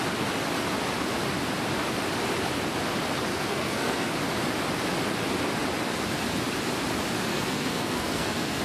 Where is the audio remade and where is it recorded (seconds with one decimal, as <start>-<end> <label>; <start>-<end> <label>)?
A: 0.0-3.3 recorded; 3.3-4.1 remade; 4.1-7.3 recorded; 7.3-8.6 remade